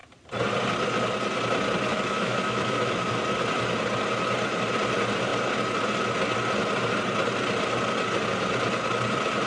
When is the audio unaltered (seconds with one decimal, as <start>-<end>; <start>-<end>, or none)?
0.0-1.9; 3.1-9.5